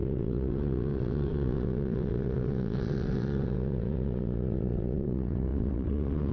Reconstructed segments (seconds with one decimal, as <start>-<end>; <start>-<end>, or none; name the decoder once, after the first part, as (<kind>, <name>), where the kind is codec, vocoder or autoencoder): 0.0-6.3 (vocoder, WaveNeXt)